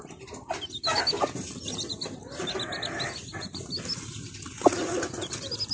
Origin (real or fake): real